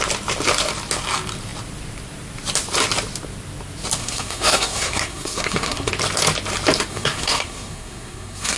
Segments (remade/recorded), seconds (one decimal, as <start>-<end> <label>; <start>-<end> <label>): 0.0-4.0 recorded; 4.0-5.9 remade; 5.9-6.9 recorded; 6.9-8.6 remade